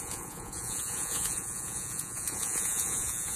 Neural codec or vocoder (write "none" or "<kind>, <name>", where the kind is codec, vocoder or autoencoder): vocoder, Vocos